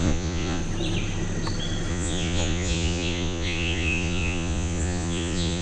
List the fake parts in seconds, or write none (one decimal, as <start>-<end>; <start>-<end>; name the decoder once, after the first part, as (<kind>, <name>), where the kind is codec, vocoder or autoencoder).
0.0-0.6 (vocoder, Vocos); 1.9-5.6